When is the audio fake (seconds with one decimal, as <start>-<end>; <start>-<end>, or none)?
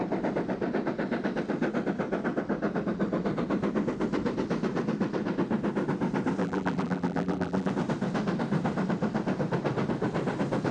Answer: 6.4-7.7